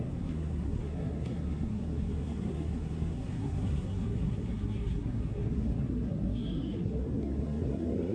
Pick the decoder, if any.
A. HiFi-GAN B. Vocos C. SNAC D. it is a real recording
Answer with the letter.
C